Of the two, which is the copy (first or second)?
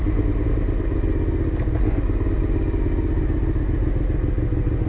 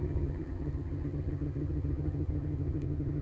second